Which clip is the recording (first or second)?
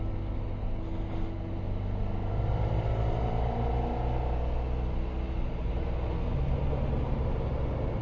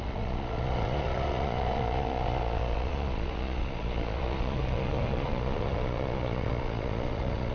first